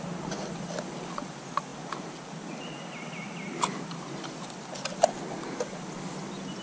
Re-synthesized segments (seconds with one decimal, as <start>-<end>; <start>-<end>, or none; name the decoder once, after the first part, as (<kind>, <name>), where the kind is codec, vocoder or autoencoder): none

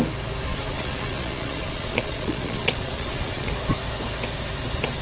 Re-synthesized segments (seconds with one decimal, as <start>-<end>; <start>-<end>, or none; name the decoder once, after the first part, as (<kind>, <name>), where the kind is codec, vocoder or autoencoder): 0.5-3.5 (vocoder, Vocos)

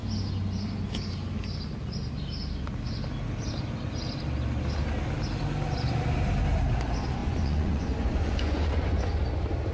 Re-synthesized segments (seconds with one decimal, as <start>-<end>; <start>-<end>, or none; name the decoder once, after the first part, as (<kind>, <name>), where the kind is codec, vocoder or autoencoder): 7.2-9.2 (vocoder, Vocos)